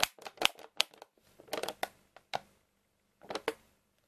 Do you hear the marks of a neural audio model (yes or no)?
no